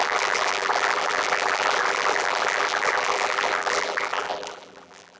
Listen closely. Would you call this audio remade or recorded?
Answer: remade